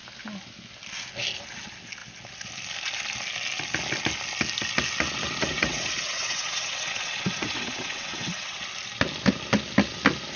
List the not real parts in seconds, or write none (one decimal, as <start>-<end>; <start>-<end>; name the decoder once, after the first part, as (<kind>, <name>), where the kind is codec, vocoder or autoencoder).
5.5-8.6 (vocoder, WaveNeXt)